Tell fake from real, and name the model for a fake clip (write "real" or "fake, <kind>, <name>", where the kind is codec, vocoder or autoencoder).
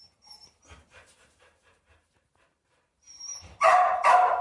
fake, vocoder, BigVGAN v2